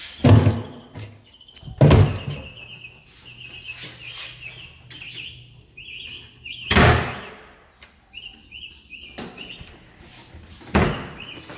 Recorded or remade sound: recorded